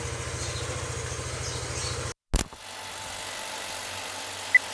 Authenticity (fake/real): real